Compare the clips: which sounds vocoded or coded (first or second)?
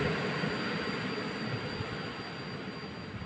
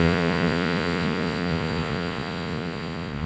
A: second